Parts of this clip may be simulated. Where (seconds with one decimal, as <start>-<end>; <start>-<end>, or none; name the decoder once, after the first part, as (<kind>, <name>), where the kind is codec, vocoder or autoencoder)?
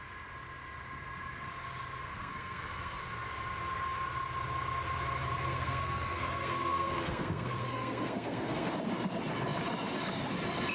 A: 2.0-3.0 (codec, SNAC); 5.5-8.7